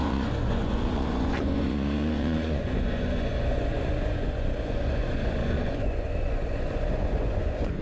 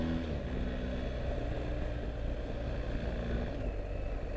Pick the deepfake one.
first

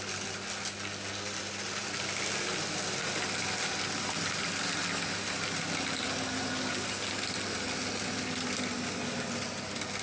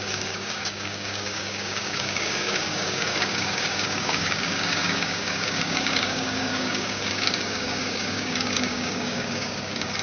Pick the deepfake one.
second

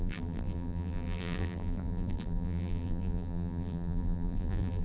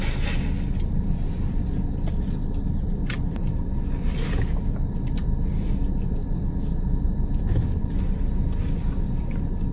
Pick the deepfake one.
first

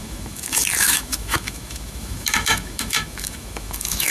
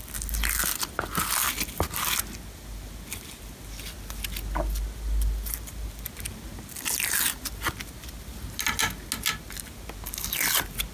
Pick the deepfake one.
first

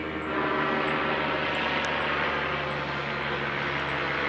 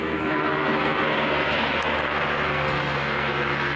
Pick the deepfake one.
second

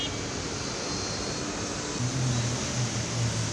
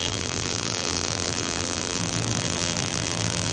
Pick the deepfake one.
second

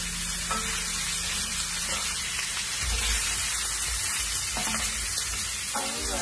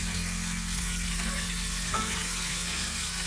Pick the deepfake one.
second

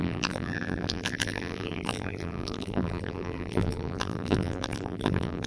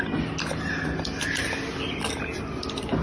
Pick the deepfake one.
first